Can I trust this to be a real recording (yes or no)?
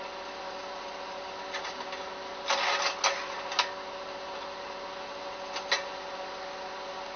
yes